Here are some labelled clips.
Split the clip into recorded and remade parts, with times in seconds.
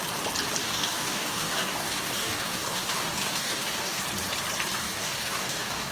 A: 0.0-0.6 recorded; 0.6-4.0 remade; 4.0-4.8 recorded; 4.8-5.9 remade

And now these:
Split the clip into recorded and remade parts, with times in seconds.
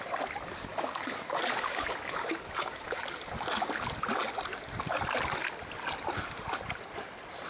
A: 0.0-0.7 recorded; 0.7-3.0 remade; 3.0-7.5 recorded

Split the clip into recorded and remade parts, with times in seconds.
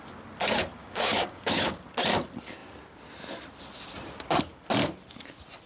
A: 0.0-0.8 recorded; 0.8-1.7 remade; 1.7-5.7 recorded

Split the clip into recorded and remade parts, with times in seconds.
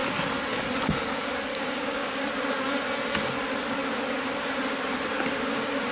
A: 0.0-1.5 recorded; 1.5-2.2 remade; 2.2-5.9 recorded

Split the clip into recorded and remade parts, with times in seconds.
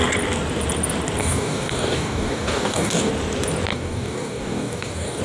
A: 0.0-1.2 recorded; 1.2-3.1 remade; 3.1-3.7 recorded; 3.7-5.2 remade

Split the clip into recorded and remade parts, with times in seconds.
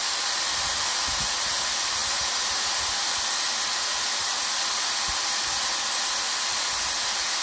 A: 0.0-7.4 recorded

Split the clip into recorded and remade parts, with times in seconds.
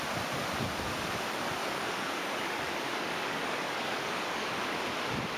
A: 0.0-1.6 recorded; 1.6-4.8 remade; 4.8-5.4 recorded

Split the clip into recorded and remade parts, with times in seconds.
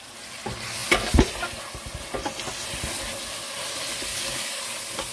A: 0.0-4.1 recorded; 4.1-4.6 remade; 4.6-5.1 recorded